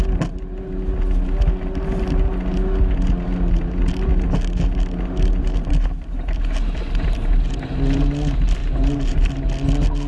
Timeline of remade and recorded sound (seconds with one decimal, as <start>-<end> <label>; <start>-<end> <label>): 0.0-8.6 recorded; 8.6-9.3 remade; 9.3-10.1 recorded